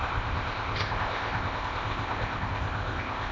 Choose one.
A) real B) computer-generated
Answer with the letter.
B